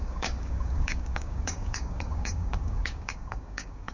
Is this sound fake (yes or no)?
yes